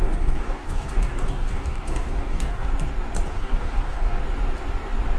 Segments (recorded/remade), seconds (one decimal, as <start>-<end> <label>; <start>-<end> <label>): 0.0-2.7 remade; 2.7-3.3 recorded; 3.3-4.2 remade; 4.2-5.2 recorded